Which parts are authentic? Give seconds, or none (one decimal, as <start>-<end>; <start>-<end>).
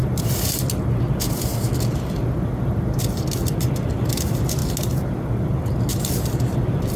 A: 0.0-3.0; 4.6-5.9